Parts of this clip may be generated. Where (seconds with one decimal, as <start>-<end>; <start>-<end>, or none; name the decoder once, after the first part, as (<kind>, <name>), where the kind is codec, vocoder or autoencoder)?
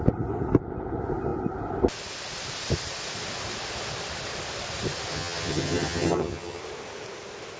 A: 5.1-6.6 (vocoder, HiFi-GAN)